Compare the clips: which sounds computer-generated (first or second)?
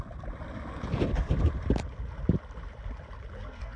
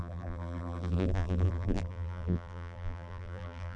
second